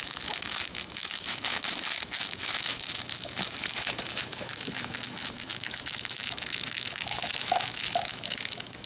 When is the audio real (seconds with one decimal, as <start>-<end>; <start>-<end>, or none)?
none